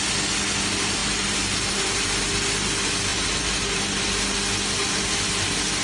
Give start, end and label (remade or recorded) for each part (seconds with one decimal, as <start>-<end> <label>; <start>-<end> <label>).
0.0-1.0 recorded; 1.0-2.2 remade; 2.2-3.1 recorded; 3.1-3.8 remade; 3.8-5.8 recorded